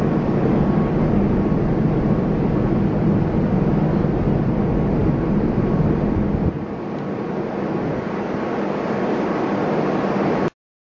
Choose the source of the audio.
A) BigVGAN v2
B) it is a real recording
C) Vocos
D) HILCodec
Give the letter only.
B